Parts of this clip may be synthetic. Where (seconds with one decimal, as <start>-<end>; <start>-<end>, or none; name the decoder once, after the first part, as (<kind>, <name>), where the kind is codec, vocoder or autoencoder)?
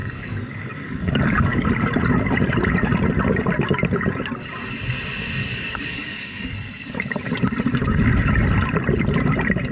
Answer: 0.0-1.7 (codec, DAC); 5.4-7.2